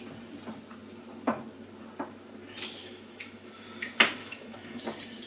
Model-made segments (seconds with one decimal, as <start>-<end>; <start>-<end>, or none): 2.8-3.5; 4.2-4.8